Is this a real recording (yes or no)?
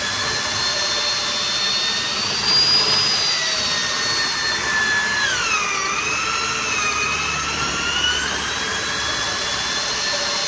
yes